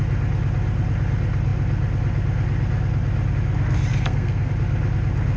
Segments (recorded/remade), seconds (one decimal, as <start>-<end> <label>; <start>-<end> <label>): 0.0-3.9 recorded; 3.9-4.5 remade; 4.5-5.4 recorded